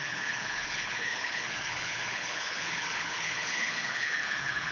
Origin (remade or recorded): remade